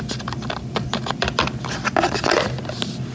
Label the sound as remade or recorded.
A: recorded